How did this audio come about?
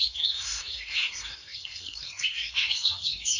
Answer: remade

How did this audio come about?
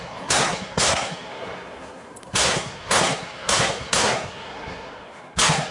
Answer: remade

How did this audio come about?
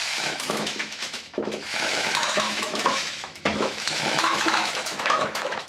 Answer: remade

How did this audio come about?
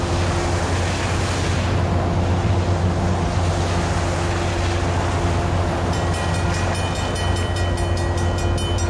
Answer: recorded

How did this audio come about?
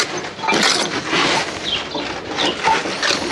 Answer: recorded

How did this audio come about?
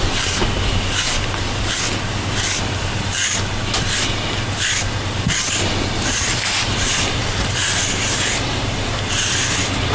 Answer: recorded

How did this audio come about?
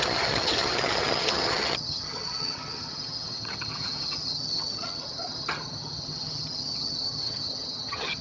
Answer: remade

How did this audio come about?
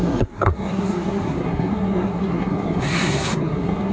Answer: remade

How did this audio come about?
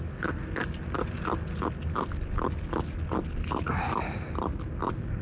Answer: recorded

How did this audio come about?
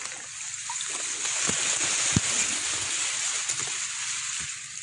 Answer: recorded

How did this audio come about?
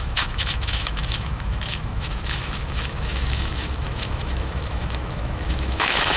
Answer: remade